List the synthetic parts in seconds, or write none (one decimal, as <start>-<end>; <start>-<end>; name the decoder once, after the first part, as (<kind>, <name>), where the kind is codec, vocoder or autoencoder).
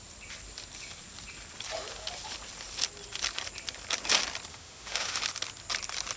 4.5-5.2 (autoencoder, DAC-VAE)